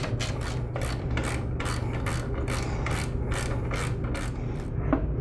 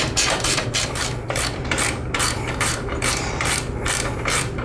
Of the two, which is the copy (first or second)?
second